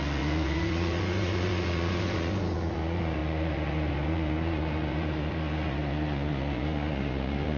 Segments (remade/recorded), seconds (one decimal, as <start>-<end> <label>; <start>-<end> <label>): 0.0-7.6 remade